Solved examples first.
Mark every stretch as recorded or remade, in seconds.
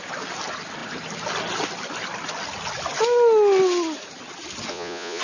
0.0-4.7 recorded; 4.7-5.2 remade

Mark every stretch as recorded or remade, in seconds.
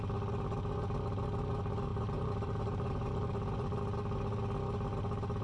0.0-1.9 recorded; 1.9-3.8 remade; 3.8-5.4 recorded